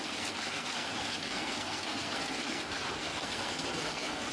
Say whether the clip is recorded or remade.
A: remade